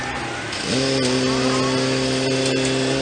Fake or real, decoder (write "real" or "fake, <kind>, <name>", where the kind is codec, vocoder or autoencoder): real